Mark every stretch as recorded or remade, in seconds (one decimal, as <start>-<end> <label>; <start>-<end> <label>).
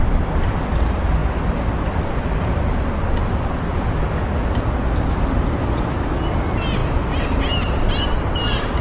0.0-8.8 recorded